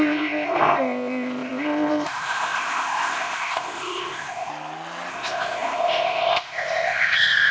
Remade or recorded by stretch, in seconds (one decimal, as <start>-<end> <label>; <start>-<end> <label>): 0.0-4.5 remade; 4.5-5.1 recorded; 5.1-7.5 remade